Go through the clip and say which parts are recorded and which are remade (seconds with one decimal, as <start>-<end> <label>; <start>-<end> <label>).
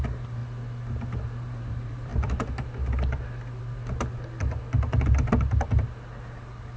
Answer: 0.0-0.4 remade; 0.4-1.2 recorded; 1.2-2.1 remade; 2.1-6.2 recorded; 6.2-6.8 remade